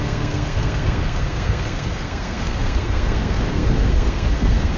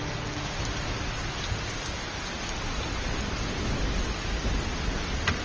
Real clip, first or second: second